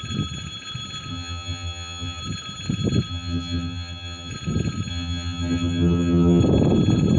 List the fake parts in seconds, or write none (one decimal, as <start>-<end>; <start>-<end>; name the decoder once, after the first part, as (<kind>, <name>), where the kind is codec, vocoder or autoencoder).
1.1-2.2 (vocoder, HiFi-GAN); 3.1-4.3; 4.9-6.4

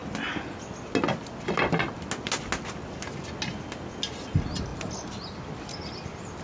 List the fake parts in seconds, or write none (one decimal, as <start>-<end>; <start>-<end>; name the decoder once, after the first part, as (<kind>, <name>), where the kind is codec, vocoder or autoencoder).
none

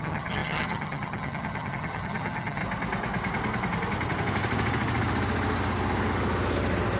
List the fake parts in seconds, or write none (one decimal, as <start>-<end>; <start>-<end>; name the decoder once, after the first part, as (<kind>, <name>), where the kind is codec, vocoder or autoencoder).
0.0-2.6 (vocoder, HiFi-GAN)

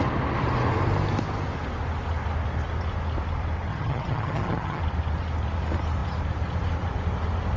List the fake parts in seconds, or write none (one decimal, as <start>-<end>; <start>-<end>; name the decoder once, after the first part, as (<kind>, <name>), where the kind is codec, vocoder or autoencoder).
3.7-4.8 (vocoder, HiFi-GAN)

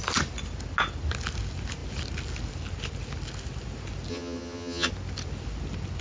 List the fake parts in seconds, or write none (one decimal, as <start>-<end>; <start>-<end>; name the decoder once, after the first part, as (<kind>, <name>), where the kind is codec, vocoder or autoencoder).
4.1-4.9 (vocoder, HiFi-GAN)

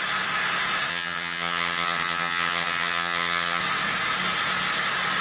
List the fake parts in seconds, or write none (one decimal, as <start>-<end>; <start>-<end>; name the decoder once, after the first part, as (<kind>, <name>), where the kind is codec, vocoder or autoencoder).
0.9-3.6 (vocoder, HiFi-GAN)